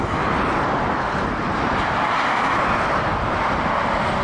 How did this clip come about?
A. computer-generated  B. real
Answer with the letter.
B